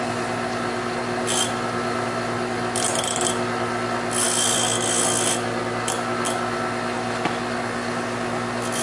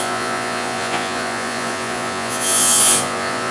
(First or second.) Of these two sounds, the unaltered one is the first